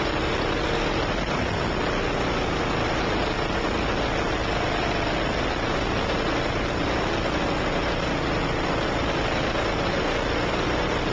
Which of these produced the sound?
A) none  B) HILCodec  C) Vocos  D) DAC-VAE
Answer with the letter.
A